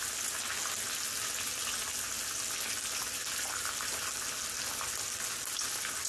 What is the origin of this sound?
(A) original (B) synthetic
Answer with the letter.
A